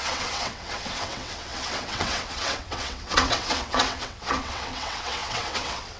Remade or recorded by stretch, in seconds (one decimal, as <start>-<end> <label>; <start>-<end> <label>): 0.0-6.0 remade